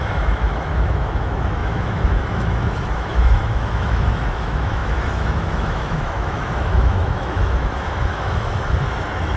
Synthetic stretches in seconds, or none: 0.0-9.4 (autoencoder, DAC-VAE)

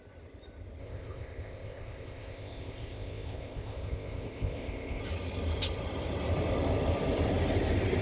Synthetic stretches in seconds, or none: 0.8-5.0 (codec, ZipCodec)

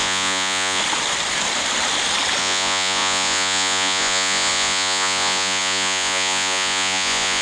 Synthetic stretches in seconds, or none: 0.0-0.8 (vocoder, Vocos); 2.4-7.4

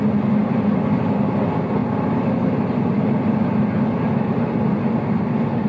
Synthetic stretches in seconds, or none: none

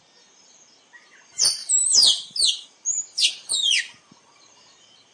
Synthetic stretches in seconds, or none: none

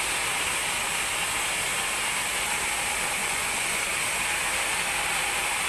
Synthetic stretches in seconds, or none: 3.2-3.9 (vocoder, Vocos)